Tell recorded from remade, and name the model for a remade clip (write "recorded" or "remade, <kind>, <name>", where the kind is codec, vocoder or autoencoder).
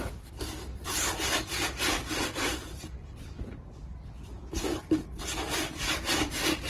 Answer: recorded